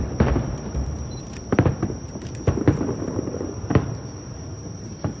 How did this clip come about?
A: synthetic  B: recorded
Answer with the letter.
A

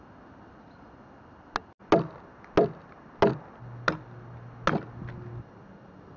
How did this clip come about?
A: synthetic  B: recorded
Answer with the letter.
B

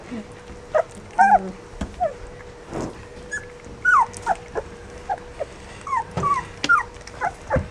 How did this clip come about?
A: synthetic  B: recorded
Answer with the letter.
B